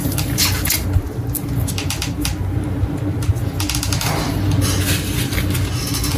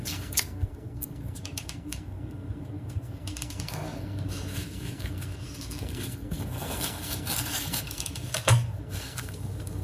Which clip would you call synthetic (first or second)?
second